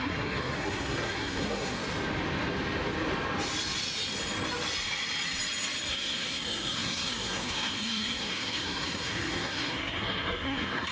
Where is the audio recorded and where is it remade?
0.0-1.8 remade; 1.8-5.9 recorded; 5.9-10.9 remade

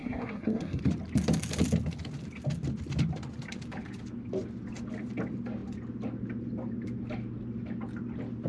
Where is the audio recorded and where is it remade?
0.0-0.8 remade; 0.8-8.5 recorded

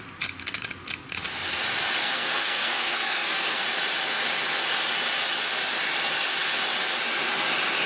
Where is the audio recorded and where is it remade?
0.0-2.0 recorded; 2.0-3.6 remade; 3.6-7.9 recorded

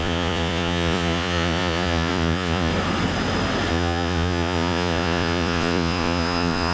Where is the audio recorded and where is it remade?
0.0-2.7 remade; 2.7-3.7 recorded; 3.7-6.7 remade

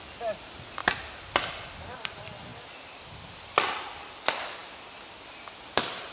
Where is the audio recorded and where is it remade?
0.0-6.1 recorded

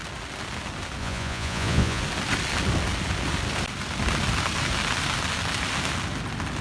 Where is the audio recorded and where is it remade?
0.0-1.0 recorded; 1.0-2.0 remade; 2.0-6.6 recorded

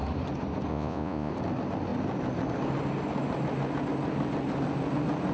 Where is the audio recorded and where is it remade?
0.0-0.7 recorded; 0.7-1.3 remade; 1.3-5.3 recorded

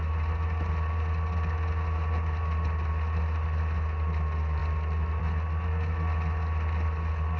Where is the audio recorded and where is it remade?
0.0-7.4 recorded